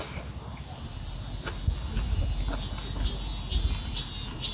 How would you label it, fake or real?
real